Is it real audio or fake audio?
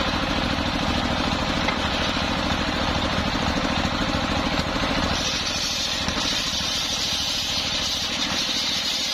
fake